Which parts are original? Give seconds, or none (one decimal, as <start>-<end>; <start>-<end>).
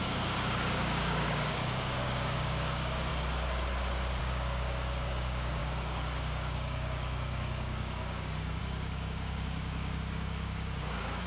3.1-4.2